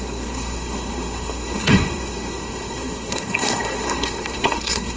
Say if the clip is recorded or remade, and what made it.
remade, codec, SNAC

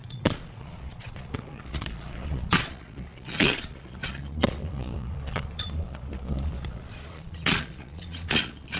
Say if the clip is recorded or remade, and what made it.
remade, vocoder, Vocos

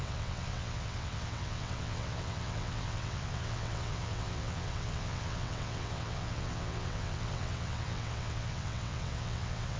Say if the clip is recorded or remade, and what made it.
remade, vocoder, WaveNeXt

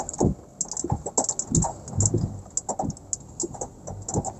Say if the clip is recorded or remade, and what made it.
recorded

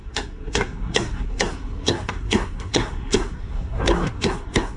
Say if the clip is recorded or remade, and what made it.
remade, codec, SNAC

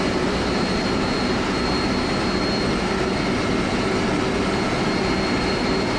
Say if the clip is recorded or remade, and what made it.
recorded